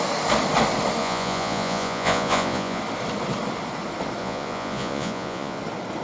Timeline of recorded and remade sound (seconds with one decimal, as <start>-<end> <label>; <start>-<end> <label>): 0.0-1.0 recorded; 1.0-2.8 remade; 2.8-4.2 recorded; 4.2-5.6 remade; 5.6-6.0 recorded